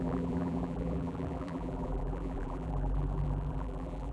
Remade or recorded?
remade